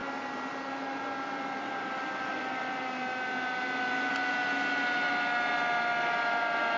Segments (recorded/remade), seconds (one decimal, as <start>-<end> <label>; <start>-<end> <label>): 0.0-6.8 recorded